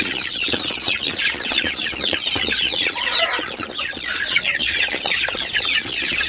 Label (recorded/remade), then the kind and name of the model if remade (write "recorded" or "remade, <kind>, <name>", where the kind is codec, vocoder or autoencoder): remade, vocoder, Vocos